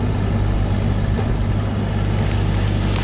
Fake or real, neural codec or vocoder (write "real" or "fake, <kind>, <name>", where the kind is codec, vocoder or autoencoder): real